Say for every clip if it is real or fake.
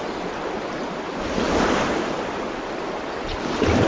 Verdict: real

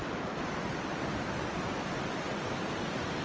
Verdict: real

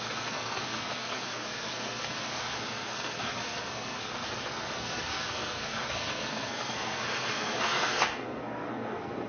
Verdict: fake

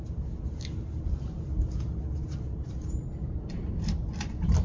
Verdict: real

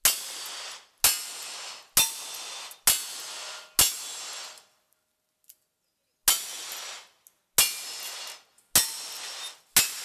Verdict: real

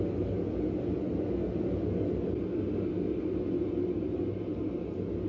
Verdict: real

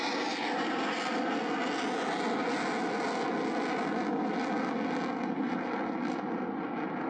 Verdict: real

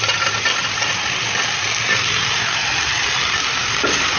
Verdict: real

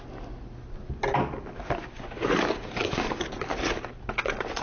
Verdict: real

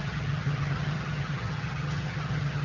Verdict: fake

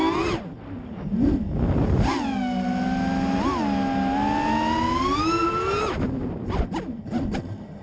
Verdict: real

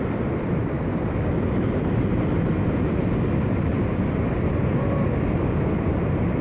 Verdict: real